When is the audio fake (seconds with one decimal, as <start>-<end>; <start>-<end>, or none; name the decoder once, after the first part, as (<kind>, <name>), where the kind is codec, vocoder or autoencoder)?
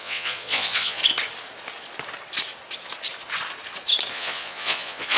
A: 0.0-1.0 (vocoder, Vocos); 4.1-5.2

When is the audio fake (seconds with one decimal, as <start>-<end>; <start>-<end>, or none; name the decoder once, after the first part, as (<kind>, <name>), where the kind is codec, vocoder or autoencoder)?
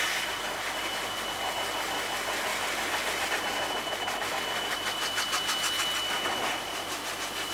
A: 2.5-3.3 (vocoder, BigVGAN v2)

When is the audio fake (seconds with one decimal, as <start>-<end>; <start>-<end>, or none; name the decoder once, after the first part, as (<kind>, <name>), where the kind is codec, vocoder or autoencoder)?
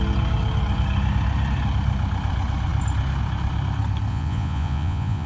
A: 4.1-5.3 (vocoder, Vocos)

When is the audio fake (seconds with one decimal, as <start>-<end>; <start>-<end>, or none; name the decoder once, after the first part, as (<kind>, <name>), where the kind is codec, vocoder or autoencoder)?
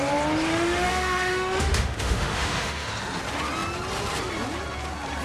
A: 0.5-2.9 (autoencoder, DAC-VAE)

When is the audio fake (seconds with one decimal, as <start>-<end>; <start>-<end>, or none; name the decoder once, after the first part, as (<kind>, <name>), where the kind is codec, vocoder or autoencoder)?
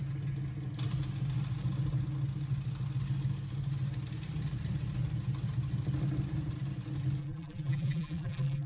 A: 7.2-8.7 (vocoder, BigVGAN v2)